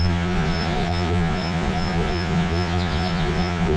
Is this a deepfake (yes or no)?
yes